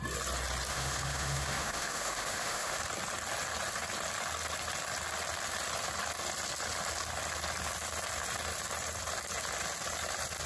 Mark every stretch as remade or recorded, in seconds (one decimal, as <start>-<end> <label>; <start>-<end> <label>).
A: 0.0-0.7 recorded; 0.7-2.8 remade; 2.8-10.5 recorded